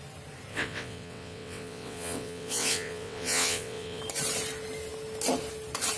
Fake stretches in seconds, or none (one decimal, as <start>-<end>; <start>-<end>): 0.5-4.0